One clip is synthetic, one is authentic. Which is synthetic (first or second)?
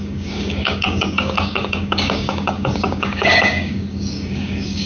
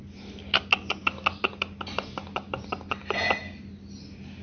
first